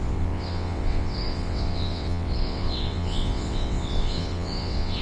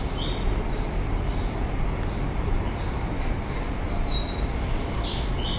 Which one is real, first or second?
second